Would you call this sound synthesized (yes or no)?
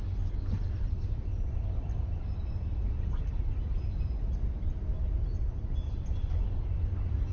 no